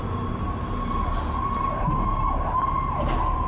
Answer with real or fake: real